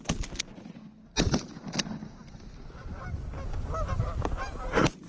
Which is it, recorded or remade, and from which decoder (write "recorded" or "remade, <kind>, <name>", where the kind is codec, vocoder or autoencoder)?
recorded